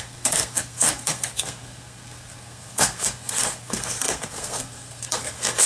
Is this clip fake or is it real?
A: fake